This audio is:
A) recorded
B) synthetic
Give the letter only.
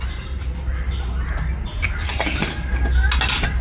A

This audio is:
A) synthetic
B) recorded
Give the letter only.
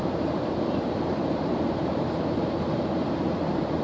A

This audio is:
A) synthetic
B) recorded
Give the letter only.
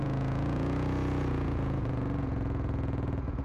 A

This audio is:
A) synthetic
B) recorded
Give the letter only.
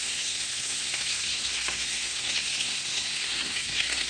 A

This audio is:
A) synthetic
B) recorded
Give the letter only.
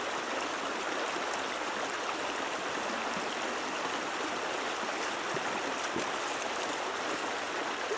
B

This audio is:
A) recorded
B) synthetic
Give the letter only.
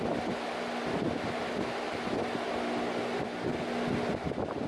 A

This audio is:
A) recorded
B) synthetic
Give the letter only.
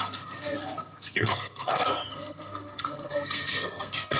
B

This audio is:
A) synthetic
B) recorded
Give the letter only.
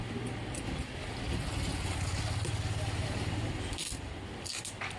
B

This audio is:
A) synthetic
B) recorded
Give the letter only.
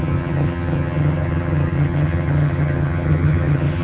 A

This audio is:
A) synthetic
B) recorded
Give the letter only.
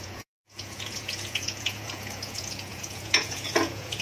A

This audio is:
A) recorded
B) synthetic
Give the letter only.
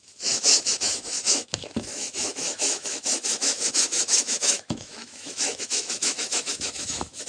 B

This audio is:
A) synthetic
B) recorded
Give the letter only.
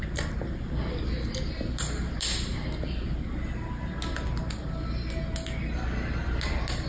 B